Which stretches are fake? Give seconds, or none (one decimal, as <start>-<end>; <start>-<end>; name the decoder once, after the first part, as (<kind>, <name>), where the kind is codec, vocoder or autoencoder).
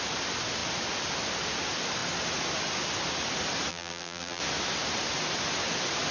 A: 3.7-4.4 (vocoder, BigVGAN v2)